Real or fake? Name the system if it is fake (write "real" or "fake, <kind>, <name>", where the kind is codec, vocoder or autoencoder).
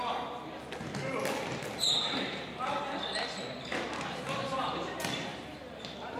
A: real